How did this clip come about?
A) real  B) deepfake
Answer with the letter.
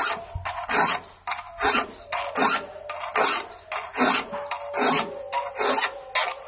A